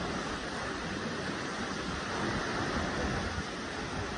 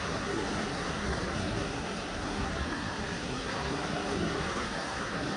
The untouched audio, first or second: first